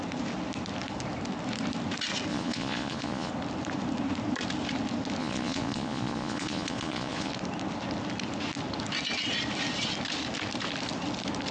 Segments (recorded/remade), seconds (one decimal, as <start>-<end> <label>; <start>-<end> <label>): 0.0-2.3 recorded; 2.3-3.3 remade; 3.3-5.2 recorded; 5.2-7.3 remade; 7.3-11.5 recorded